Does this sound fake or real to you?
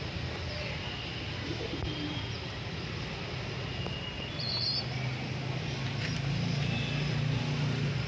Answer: real